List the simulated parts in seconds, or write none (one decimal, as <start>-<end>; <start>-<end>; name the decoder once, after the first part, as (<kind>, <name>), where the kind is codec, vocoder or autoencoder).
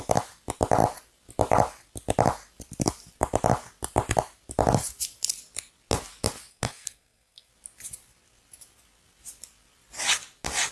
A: 6.5-7.5 (codec, SNAC)